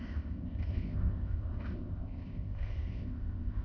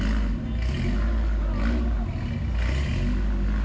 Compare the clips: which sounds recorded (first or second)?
second